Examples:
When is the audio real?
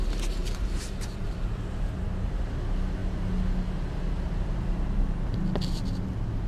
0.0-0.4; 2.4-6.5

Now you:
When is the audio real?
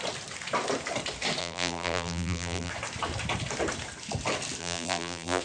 0.0-1.4; 2.7-4.6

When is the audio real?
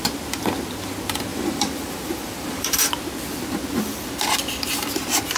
0.0-1.3; 2.9-5.4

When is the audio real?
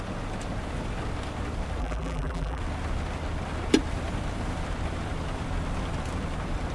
0.0-1.8; 2.6-6.7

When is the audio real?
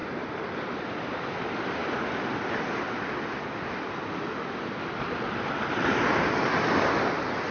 0.0-7.5